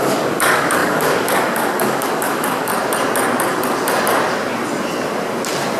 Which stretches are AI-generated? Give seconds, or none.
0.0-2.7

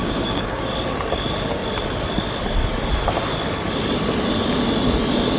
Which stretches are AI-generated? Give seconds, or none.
0.0-0.7